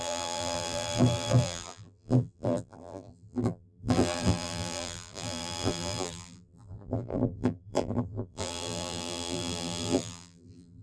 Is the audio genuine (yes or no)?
no